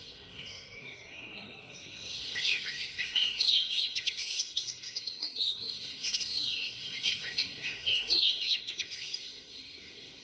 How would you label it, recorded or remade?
remade